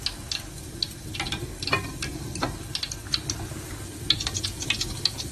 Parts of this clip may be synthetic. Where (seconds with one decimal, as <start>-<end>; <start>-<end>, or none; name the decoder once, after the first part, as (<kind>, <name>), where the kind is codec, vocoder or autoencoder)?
none